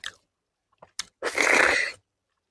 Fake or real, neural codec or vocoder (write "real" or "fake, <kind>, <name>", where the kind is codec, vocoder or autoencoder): real